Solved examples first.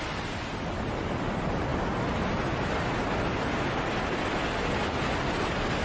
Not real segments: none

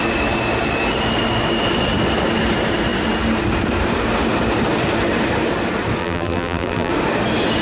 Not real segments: 6.0-6.9 (vocoder, BigVGAN v2)

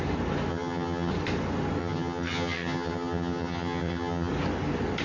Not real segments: 0.5-1.1 (vocoder, HiFi-GAN); 1.8-4.3

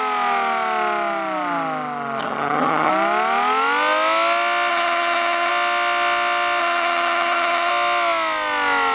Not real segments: 2.2-2.9 (vocoder, HiFi-GAN); 4.7-5.5; 6.6-7.7